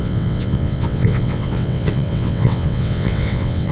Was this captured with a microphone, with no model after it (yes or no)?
no